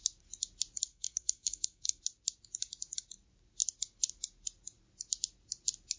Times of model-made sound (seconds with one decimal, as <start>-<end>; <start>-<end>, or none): 0.9-2.0